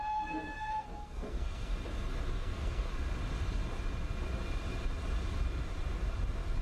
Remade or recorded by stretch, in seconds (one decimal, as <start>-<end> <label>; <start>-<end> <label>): 0.0-1.7 remade; 1.7-2.3 recorded; 2.3-2.9 remade; 2.9-6.6 recorded